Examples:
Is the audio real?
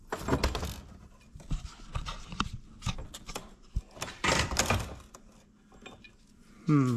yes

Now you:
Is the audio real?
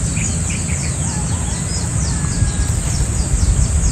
yes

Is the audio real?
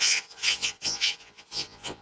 no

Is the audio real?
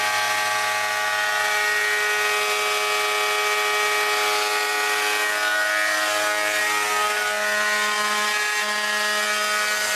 yes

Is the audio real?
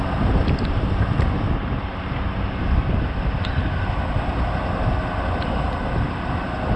yes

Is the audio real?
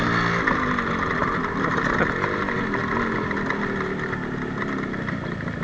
yes